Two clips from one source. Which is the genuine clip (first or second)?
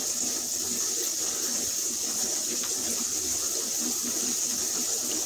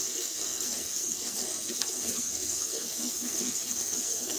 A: first